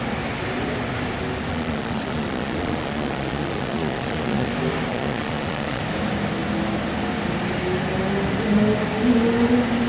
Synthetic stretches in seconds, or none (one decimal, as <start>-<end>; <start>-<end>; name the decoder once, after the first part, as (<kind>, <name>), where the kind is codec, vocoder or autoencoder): 1.5-4.5 (vocoder, Vocos); 4.9-5.8